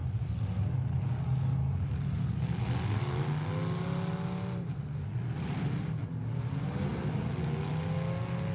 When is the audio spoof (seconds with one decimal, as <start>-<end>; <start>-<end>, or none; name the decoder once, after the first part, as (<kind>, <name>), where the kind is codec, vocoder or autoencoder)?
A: none